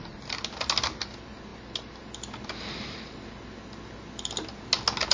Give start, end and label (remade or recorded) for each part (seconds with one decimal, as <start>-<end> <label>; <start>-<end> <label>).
0.0-5.1 recorded